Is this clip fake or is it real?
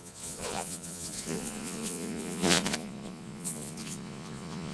fake